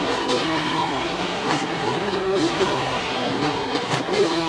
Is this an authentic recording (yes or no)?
no